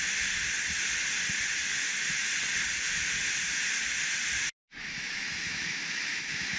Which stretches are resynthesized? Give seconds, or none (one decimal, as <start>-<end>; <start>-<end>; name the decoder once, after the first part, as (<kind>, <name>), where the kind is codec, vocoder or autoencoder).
4.8-6.6 (autoencoder, DAC-VAE)